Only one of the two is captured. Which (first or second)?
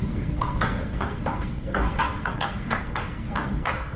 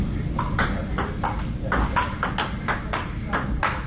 second